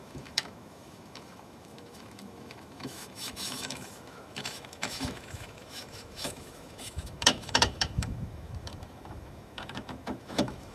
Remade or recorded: remade